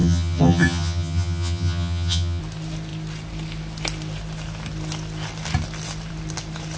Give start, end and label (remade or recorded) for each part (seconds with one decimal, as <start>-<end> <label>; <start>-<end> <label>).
0.0-2.4 remade; 2.4-6.8 recorded